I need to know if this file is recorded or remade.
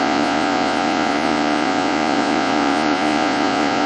remade